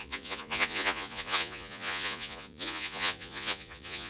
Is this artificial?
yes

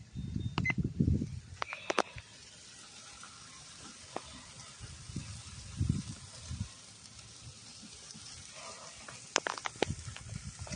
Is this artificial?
no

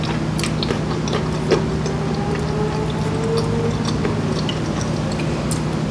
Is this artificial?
no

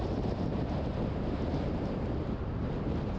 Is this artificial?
no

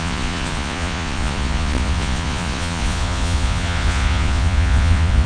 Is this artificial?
yes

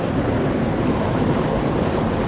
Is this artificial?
no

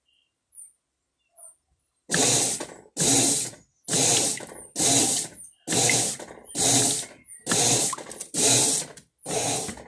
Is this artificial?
no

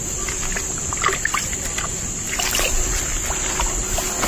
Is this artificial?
no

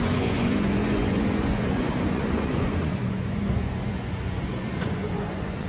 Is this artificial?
yes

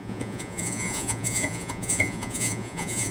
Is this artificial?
yes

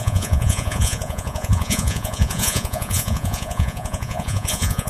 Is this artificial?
yes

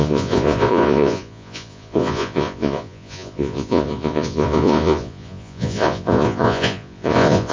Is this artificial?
yes